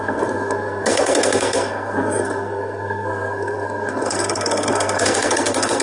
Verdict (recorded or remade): remade